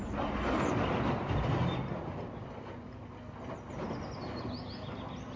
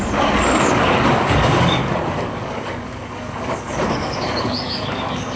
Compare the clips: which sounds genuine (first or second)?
first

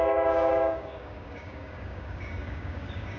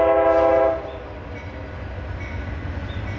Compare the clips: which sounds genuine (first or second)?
second